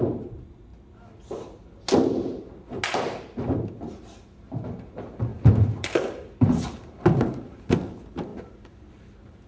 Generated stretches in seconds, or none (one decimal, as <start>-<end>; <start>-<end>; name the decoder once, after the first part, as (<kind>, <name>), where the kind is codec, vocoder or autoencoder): 5.3-6.5 (vocoder, BigVGAN v2); 8.3-8.9